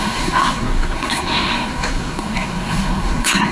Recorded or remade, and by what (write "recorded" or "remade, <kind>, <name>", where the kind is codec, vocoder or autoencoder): remade, codec, SNAC